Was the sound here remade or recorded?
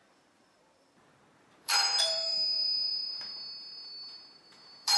remade